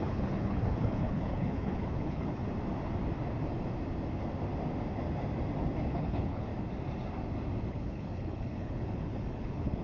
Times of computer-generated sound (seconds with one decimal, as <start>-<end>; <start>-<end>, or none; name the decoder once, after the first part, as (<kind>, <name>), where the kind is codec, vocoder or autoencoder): 0.0-2.4 (codec, HILCodec); 5.9-6.5; 7.7-9.8